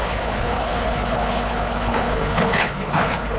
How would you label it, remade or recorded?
remade